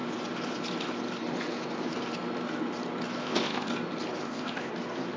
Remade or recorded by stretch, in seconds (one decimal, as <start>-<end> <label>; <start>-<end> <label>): 0.0-3.2 recorded; 3.2-3.7 remade; 3.7-4.2 recorded; 4.2-4.7 remade; 4.7-5.2 recorded